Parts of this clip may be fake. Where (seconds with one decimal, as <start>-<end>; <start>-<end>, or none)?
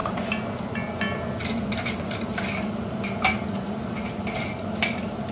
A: none